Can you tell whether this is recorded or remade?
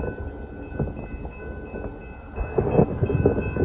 recorded